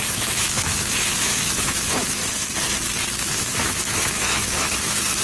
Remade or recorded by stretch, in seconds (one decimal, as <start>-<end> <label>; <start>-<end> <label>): 0.0-2.2 remade; 2.2-3.1 recorded; 3.1-5.2 remade